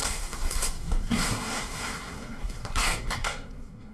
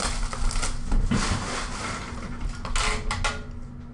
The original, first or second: second